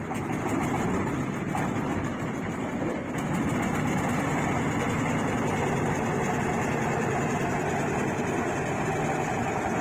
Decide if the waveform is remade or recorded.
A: recorded